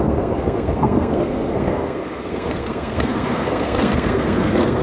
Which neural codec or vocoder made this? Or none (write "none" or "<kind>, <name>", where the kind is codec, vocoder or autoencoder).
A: codec, SNAC